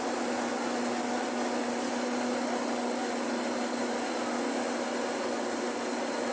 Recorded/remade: recorded